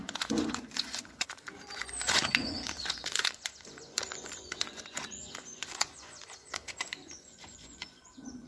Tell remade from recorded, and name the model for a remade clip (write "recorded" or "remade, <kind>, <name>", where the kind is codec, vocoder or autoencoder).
remade, vocoder, Vocos